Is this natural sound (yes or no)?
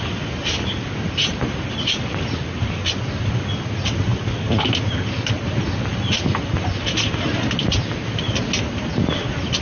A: yes